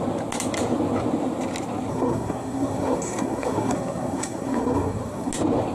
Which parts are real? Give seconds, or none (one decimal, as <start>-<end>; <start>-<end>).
0.0-1.9; 5.3-5.7